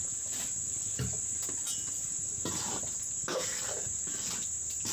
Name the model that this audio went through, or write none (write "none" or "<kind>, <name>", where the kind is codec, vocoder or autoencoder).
none